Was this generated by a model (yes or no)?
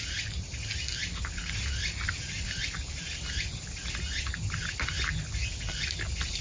no